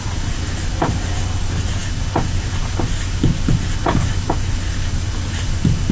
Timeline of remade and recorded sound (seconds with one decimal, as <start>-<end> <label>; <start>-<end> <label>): 0.0-5.9 recorded